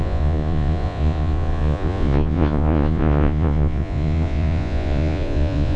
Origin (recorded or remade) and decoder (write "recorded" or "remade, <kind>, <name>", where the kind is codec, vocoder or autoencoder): remade, vocoder, Vocos